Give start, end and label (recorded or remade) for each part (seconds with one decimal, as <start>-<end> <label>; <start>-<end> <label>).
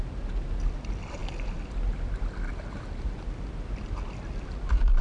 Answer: 0.0-5.0 recorded